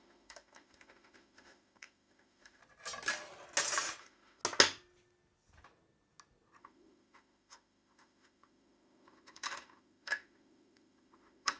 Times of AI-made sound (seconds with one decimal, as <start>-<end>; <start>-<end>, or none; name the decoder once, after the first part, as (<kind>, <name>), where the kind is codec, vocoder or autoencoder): 0.0-2.6 (autoencoder, DAC-VAE); 4.0-4.4; 6.6-11.6